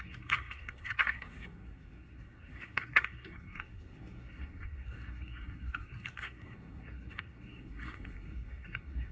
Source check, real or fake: fake